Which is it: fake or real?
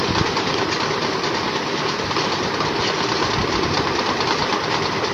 real